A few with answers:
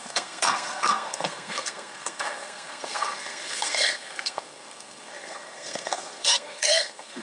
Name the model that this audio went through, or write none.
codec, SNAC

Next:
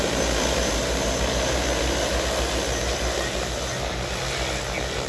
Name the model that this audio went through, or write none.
none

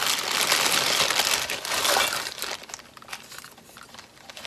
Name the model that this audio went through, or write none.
none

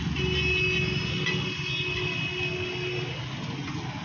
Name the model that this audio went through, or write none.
none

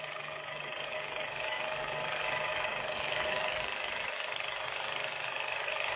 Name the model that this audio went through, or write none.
codec, DAC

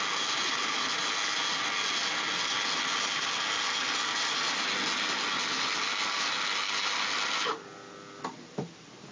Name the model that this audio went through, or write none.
none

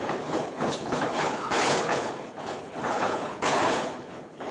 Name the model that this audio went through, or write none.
codec, HILCodec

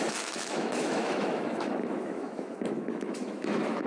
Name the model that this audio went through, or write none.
autoencoder, DAC-VAE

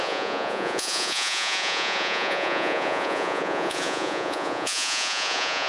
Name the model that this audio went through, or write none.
vocoder, Vocos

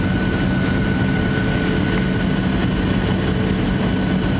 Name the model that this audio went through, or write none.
none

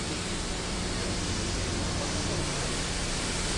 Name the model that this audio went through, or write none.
none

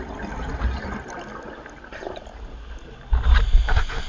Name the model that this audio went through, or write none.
none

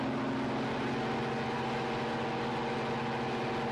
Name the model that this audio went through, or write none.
none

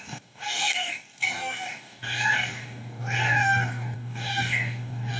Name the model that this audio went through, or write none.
codec, DAC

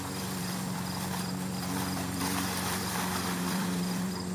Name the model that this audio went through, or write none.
vocoder, BigVGAN v2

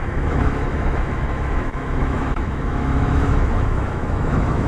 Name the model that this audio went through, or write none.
autoencoder, DAC-VAE